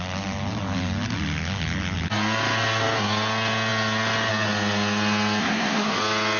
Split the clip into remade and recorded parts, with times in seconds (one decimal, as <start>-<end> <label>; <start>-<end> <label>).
0.0-5.4 recorded; 5.4-6.0 remade; 6.0-6.4 recorded